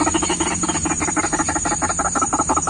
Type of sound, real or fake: real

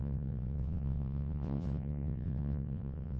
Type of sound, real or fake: fake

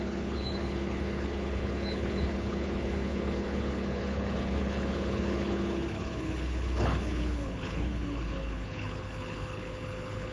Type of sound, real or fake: fake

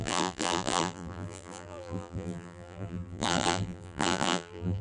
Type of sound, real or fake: fake